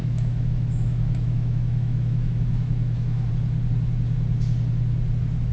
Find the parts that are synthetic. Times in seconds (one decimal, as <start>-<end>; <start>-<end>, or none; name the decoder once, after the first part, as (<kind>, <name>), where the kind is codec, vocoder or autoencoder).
0.0-3.3 (autoencoder, DAC-VAE)